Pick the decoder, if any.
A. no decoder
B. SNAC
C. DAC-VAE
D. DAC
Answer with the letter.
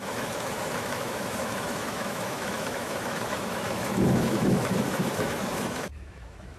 C